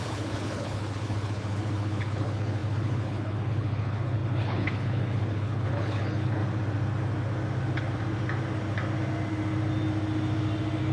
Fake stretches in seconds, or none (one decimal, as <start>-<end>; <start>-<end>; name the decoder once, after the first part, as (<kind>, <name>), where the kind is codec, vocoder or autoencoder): 0.0-6.4 (codec, HILCodec)